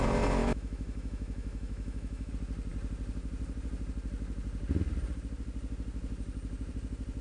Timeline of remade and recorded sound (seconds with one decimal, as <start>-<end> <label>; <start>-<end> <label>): 0.0-0.4 recorded; 0.4-2.3 remade; 2.3-7.2 recorded